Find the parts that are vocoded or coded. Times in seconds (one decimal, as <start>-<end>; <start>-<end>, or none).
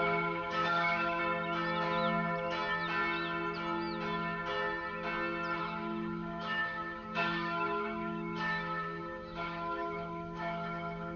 0.0-1.2; 5.6-11.2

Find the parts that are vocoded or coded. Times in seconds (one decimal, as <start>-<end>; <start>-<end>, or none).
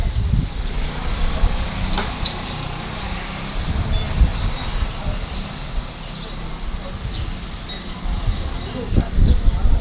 4.3-5.5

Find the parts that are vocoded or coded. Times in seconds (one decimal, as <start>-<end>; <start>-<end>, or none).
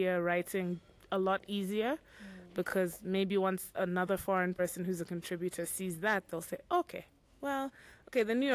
2.7-4.6; 6.6-7.7